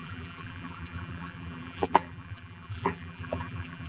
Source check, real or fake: fake